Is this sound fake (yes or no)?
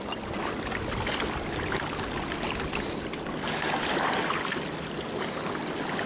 no